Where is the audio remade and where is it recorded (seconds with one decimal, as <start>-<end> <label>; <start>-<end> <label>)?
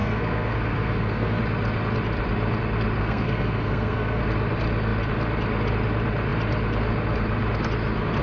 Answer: 0.0-1.4 remade; 1.4-3.0 recorded; 3.0-4.2 remade; 4.2-8.2 recorded